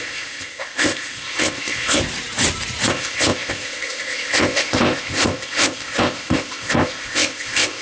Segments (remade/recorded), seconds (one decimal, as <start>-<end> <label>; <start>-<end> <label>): 0.0-2.0 remade; 2.0-2.9 recorded; 2.9-7.8 remade